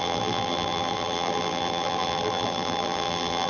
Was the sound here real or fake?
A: fake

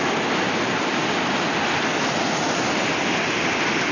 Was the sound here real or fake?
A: real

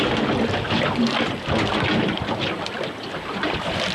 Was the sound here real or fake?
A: real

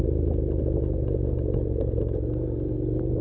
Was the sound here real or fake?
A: real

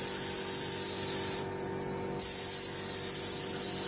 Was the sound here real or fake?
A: real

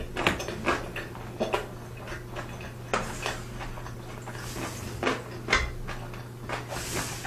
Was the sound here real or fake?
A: real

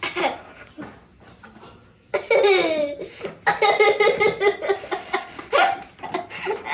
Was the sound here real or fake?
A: fake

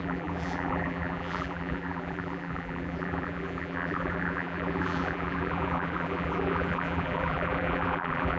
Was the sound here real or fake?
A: fake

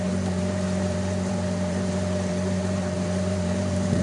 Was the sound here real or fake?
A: fake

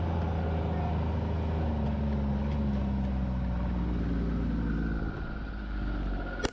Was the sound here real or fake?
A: real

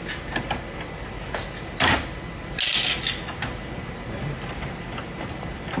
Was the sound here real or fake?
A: real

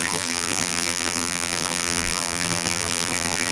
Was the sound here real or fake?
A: fake